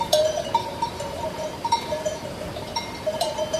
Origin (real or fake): fake